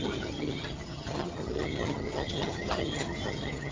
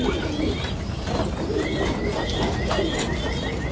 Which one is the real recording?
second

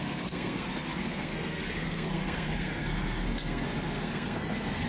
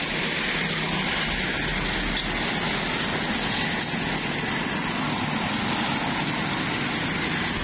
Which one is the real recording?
second